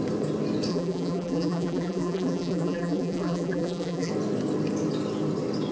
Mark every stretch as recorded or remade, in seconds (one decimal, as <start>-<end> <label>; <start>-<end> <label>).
0.0-0.7 recorded; 0.7-4.1 remade; 4.1-5.7 recorded